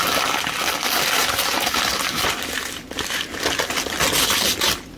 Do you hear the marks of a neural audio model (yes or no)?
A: no